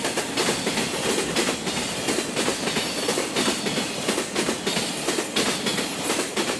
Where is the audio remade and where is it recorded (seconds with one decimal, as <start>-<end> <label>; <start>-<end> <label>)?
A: 0.0-6.6 recorded

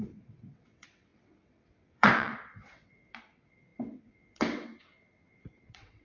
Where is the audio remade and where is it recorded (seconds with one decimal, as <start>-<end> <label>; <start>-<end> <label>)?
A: 0.0-6.0 remade

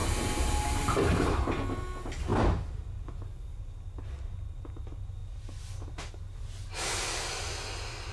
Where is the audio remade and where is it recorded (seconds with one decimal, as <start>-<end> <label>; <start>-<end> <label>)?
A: 0.0-1.3 remade; 1.3-8.1 recorded

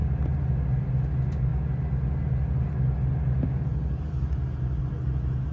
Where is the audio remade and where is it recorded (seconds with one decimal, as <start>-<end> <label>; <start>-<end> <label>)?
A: 0.0-5.5 recorded

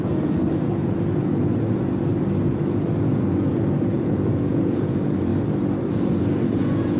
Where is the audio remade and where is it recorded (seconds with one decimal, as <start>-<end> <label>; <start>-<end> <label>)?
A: 0.0-2.1 remade; 2.1-3.0 recorded; 3.0-5.3 remade; 5.3-5.9 recorded; 5.9-7.0 remade

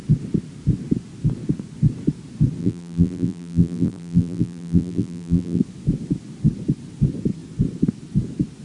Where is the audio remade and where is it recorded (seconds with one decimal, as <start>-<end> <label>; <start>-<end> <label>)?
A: 0.0-2.6 recorded; 2.6-5.6 remade; 5.6-8.6 recorded